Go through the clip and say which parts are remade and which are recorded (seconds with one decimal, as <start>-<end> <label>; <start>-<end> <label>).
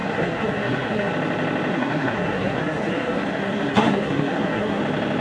0.0-1.1 remade; 1.1-1.7 recorded; 1.7-4.8 remade; 4.8-5.2 recorded